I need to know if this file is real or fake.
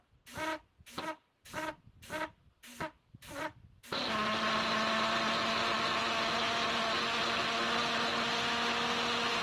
real